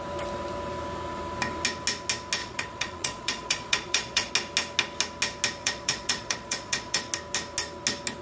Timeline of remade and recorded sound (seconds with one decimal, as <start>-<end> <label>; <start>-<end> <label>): 0.0-2.4 recorded; 2.4-4.3 remade; 4.3-5.6 recorded; 5.6-7.0 remade; 7.0-8.2 recorded